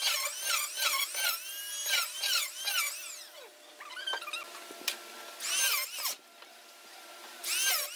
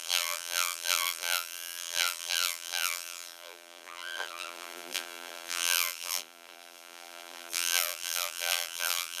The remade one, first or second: second